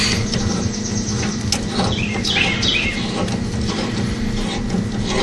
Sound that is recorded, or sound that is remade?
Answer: recorded